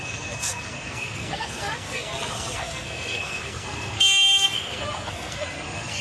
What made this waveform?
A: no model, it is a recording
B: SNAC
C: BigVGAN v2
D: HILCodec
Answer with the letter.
B